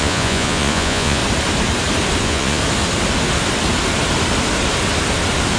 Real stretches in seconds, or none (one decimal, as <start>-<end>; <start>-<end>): 1.2-2.2; 2.6-5.6

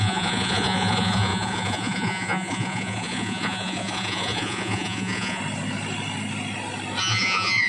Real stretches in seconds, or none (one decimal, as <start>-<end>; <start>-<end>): 5.4-7.0

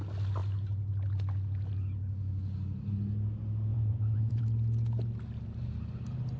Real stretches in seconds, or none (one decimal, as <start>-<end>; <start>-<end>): 0.0-3.7; 4.4-6.4

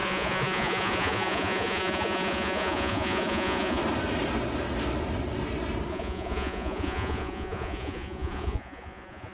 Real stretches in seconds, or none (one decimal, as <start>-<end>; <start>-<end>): 3.8-5.9